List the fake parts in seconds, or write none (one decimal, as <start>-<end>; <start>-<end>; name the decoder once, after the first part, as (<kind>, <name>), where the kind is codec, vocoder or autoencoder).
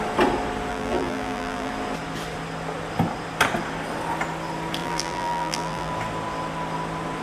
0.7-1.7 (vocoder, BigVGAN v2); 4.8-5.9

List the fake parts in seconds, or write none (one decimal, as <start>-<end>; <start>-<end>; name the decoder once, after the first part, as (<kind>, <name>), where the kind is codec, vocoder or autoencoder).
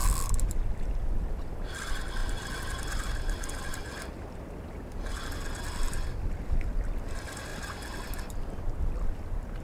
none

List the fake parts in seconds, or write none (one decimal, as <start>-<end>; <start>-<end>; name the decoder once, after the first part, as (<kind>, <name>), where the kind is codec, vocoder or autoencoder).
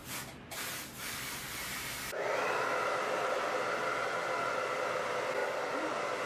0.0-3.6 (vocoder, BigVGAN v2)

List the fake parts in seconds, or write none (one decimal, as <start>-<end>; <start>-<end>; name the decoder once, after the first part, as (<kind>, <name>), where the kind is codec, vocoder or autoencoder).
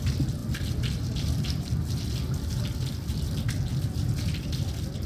0.0-5.1 (vocoder, BigVGAN v2)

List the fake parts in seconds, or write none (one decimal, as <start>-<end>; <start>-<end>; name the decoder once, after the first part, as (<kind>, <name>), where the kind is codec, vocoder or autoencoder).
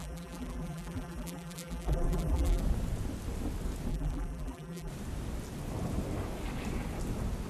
0.0-2.6 (vocoder, BigVGAN v2); 3.9-4.9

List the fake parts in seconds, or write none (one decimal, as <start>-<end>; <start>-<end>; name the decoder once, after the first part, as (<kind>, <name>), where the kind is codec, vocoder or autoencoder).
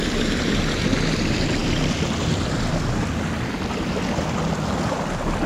none